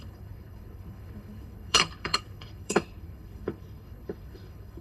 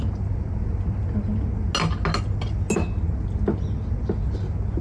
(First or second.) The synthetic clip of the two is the first